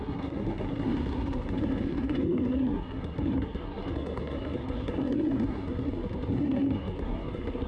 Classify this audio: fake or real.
fake